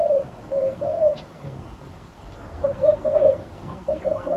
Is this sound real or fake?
fake